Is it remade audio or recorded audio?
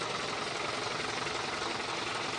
recorded